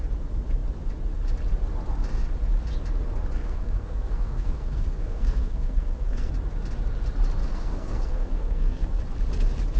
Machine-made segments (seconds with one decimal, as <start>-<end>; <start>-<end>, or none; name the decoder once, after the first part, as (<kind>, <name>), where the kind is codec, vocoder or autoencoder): 3.4-6.3 (codec, SNAC); 7.4-9.0